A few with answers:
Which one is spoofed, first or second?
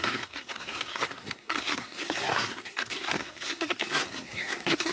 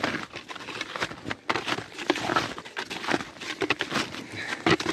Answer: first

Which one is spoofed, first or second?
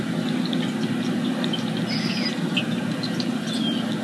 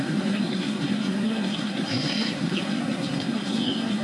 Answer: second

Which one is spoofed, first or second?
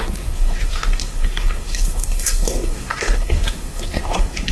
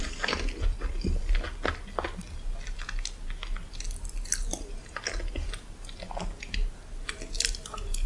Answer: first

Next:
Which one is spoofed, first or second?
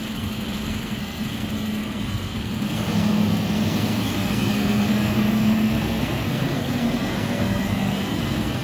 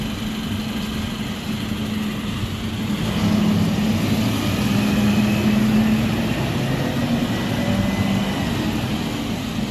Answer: first